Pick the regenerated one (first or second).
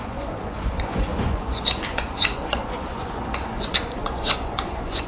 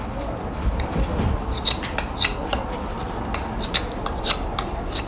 first